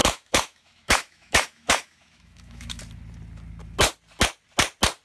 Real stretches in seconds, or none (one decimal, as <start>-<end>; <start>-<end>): 2.8-5.0